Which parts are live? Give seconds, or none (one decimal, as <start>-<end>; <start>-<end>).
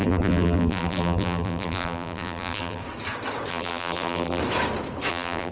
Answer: 2.8-3.5; 4.4-5.1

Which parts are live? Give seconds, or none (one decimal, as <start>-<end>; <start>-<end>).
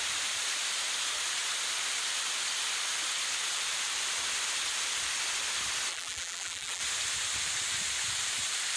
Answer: 0.0-5.9; 6.8-8.8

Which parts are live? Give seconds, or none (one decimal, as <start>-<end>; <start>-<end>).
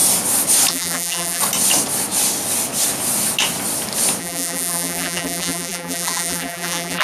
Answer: 0.0-0.7; 1.4-4.2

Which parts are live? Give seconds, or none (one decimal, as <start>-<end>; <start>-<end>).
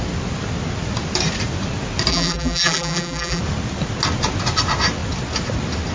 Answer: 0.0-2.1; 3.4-5.9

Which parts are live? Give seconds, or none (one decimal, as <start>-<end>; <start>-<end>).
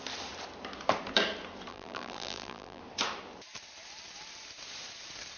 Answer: 0.0-1.7; 2.8-5.4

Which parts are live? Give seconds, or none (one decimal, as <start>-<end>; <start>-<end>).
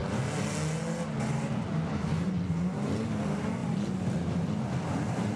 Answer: 0.0-5.4